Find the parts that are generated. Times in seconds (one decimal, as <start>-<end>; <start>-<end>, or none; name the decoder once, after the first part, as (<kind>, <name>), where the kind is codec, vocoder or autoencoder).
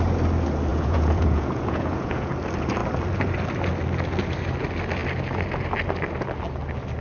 0.7-2.3 (vocoder, Vocos)